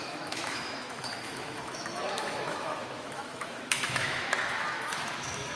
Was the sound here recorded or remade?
remade